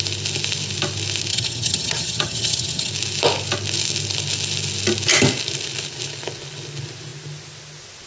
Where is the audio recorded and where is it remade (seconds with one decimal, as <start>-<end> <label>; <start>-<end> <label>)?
0.0-1.3 recorded; 1.3-2.9 remade; 2.9-8.1 recorded